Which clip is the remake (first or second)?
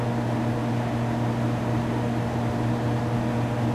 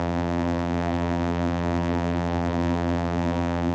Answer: second